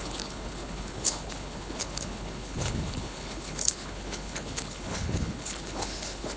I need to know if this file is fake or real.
fake